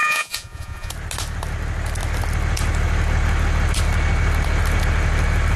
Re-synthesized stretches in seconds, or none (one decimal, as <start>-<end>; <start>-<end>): 0.0-0.9

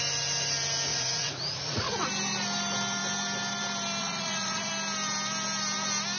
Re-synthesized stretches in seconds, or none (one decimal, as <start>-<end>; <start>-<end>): 0.9-2.1; 4.0-4.7

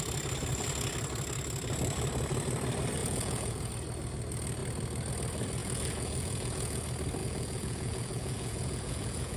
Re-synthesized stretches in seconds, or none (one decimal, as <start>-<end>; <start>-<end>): 3.0-3.7; 5.6-6.8; 7.2-9.4

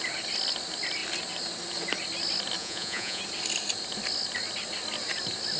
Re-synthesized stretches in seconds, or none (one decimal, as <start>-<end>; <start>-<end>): 2.6-3.2

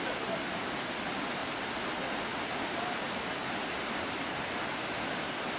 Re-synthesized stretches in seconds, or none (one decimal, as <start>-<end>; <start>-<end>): none

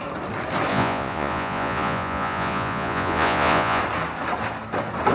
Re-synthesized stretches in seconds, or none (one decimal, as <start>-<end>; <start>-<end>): 0.7-3.8

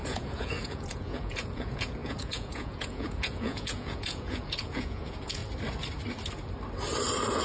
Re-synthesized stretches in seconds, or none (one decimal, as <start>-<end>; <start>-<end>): 0.0-5.4